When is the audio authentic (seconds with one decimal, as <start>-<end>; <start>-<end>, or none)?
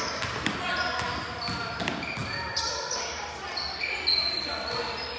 0.0-5.2